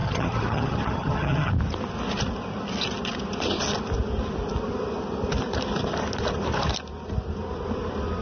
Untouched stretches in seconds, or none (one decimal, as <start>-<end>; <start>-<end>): 1.5-8.2